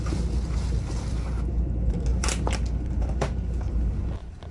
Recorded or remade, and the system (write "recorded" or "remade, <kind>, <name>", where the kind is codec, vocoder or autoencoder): recorded